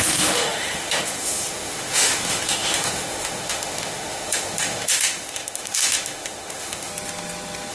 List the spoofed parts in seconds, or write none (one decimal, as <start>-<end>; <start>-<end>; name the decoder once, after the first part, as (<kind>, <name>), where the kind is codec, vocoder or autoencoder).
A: 0.0-6.9 (autoencoder, DAC-VAE)